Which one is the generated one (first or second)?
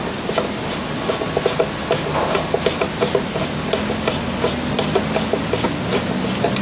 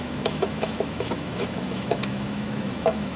second